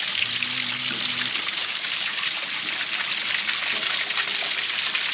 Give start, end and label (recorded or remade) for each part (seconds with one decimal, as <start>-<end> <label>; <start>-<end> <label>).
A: 0.0-1.6 recorded; 1.6-2.2 remade; 2.2-5.1 recorded